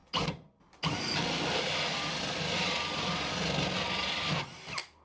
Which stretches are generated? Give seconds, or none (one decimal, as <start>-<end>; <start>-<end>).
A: none